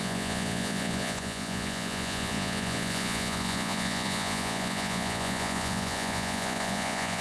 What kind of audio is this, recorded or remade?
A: remade